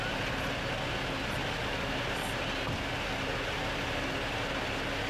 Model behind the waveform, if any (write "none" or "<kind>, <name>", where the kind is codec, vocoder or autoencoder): none